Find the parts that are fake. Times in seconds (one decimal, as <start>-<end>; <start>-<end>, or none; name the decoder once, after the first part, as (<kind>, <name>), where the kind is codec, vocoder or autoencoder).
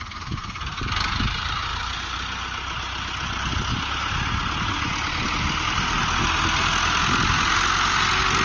none